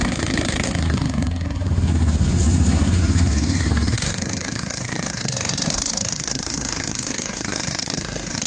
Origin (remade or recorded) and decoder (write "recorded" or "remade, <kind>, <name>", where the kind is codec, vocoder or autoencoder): remade, codec, SNAC